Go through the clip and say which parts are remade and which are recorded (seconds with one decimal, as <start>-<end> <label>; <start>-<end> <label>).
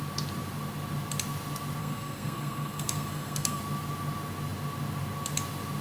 0.0-1.8 recorded; 1.8-3.6 remade; 3.6-5.8 recorded